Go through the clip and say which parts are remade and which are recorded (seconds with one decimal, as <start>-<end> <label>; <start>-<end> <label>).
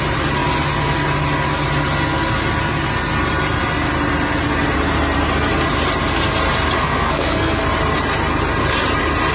0.0-6.8 recorded; 6.8-7.6 remade; 7.6-9.3 recorded